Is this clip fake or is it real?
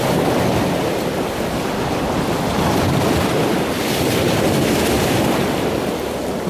real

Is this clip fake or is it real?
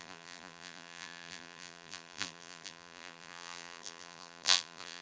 fake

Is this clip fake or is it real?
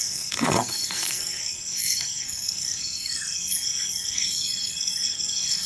fake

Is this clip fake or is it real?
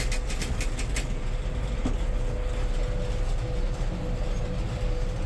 real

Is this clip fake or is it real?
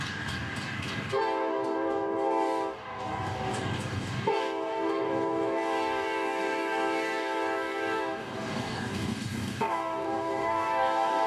fake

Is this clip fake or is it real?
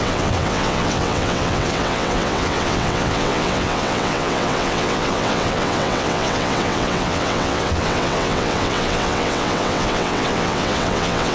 fake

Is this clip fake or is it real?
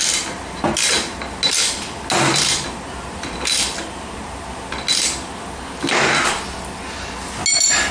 real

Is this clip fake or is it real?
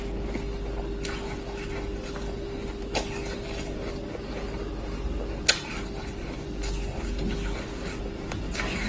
real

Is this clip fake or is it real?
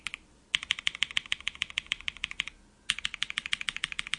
real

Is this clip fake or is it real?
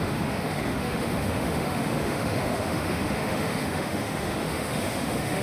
fake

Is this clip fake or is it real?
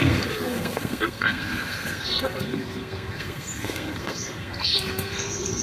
fake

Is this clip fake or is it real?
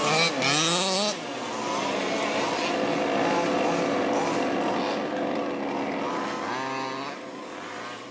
real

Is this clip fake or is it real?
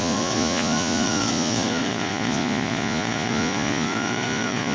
fake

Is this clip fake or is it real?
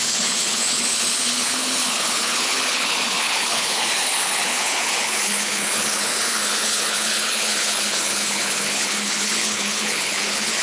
fake